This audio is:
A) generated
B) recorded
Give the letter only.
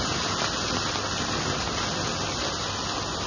B